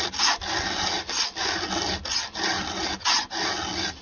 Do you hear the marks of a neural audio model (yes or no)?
no